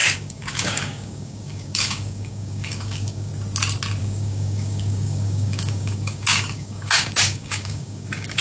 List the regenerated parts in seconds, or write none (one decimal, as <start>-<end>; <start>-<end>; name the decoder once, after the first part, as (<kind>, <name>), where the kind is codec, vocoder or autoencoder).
0.0-3.3 (codec, DAC); 4.0-8.4